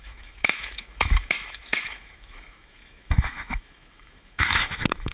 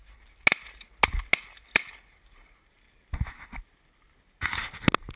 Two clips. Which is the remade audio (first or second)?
first